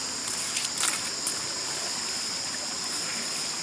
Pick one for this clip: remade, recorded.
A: recorded